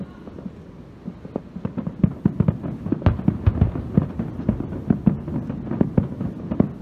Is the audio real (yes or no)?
yes